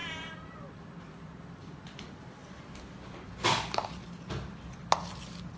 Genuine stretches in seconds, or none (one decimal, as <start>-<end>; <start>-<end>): 0.0-5.6